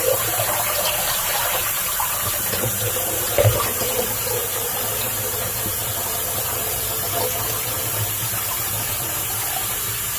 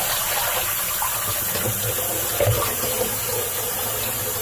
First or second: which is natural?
second